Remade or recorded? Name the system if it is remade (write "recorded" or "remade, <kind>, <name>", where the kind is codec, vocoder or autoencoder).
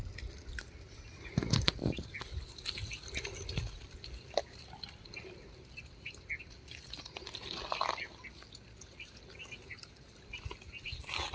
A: recorded